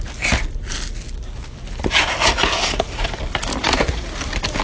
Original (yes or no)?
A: yes